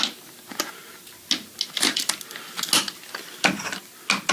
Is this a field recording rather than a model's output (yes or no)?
yes